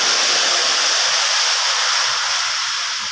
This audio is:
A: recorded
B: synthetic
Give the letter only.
A